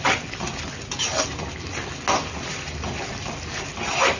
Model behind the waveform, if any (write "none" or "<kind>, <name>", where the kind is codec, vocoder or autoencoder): none